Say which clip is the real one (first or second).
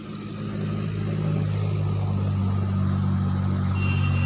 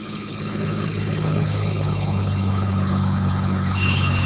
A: first